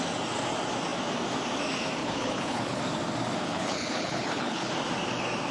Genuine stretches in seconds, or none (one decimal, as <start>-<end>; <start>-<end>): 0.0-2.0; 2.8-3.4; 4.7-5.5